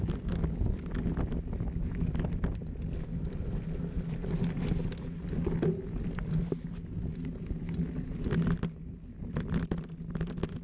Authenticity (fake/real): real